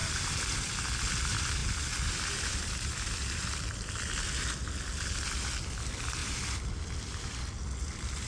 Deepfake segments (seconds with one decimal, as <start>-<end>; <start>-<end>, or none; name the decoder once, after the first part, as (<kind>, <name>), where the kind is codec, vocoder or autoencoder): 0.0-0.8 (vocoder, BigVGAN v2); 1.6-4.1; 6.2-7.4